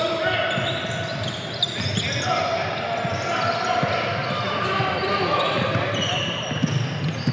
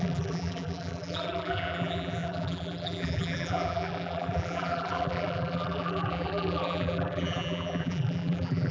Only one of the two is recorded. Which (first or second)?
first